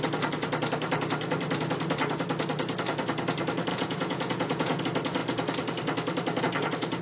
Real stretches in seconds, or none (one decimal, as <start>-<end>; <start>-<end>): 0.0-3.7; 4.8-7.0